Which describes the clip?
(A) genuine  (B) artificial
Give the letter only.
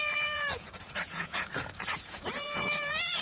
B